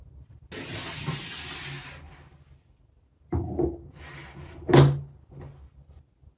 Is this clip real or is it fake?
real